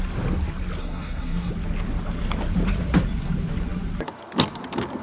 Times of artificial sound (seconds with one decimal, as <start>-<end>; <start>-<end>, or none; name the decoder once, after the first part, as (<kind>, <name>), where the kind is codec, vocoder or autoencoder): 0.8-1.5 (codec, SNAC)